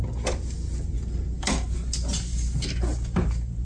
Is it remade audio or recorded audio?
recorded